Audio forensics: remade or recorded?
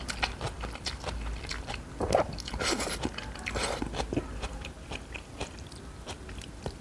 recorded